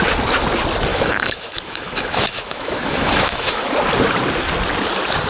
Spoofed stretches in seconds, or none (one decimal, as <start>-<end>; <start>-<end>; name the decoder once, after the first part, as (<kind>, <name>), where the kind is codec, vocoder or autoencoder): 0.9-3.7 (autoencoder, DAC-VAE)